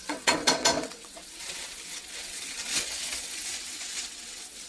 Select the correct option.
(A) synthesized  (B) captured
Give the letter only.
A